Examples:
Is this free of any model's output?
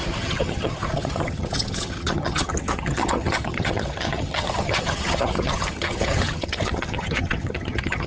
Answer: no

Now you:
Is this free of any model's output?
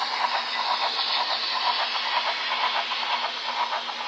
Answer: yes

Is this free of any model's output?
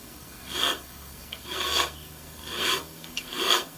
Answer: no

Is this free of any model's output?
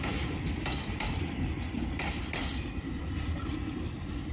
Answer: no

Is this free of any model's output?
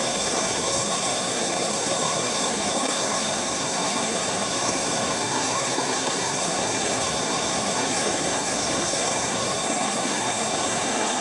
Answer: no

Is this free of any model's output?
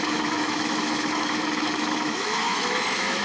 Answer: no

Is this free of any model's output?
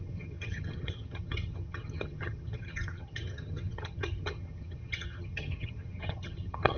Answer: no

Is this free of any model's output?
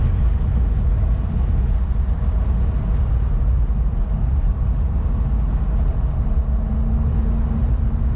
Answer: yes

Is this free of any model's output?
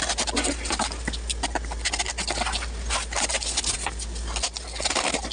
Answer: yes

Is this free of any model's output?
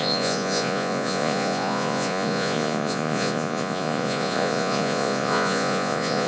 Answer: no